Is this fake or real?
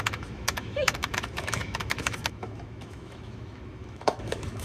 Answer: fake